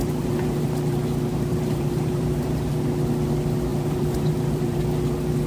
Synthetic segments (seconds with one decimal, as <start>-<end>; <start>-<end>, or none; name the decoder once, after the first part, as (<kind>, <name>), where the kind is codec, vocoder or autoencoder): 0.0-2.7 (vocoder, BigVGAN v2); 3.7-4.8